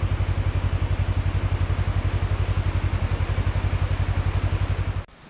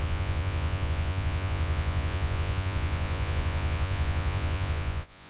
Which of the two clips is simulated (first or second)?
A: second